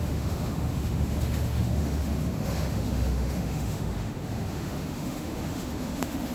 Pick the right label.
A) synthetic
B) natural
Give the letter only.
A